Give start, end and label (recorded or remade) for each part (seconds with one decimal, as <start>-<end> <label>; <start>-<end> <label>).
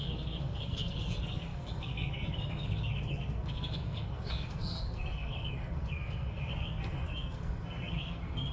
0.0-8.5 remade